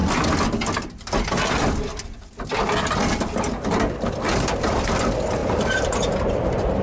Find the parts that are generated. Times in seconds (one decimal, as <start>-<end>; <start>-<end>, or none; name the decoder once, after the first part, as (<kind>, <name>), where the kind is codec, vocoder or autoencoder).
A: 5.4-6.1 (vocoder, BigVGAN v2)